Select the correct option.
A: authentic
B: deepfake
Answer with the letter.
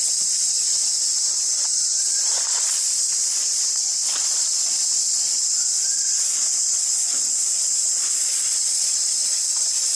B